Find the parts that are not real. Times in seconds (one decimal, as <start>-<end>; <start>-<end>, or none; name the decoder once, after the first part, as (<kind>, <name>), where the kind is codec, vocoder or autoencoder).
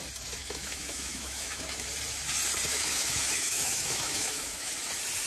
0.4-1.9 (autoencoder, DAC-VAE); 2.7-4.7